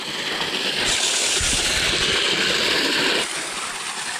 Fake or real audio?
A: real